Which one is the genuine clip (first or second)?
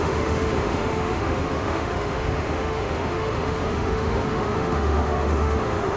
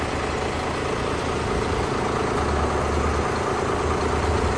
second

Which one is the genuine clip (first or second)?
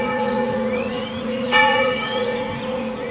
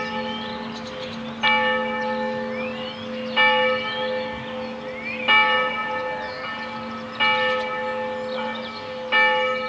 second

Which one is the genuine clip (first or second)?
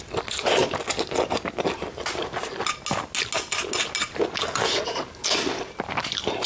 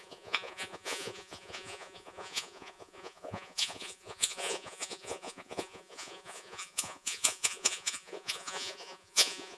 first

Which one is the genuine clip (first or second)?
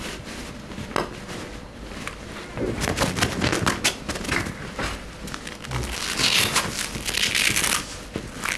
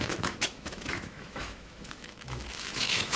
first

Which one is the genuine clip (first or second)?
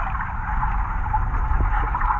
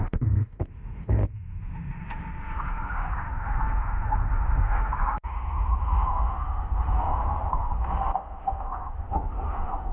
first